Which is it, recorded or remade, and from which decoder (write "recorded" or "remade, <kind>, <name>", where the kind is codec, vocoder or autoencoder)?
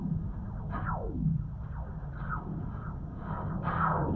recorded